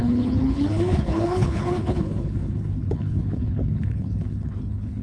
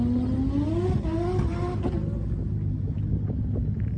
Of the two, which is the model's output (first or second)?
first